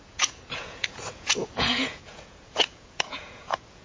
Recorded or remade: remade